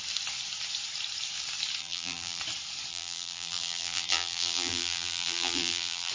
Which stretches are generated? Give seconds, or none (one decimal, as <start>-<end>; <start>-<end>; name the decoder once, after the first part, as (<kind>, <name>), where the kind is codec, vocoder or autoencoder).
1.8-2.4 (vocoder, BigVGAN v2); 2.9-6.1